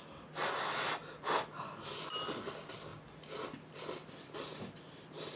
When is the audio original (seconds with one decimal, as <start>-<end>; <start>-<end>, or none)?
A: 0.0-5.4